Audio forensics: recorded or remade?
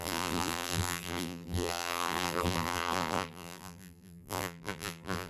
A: remade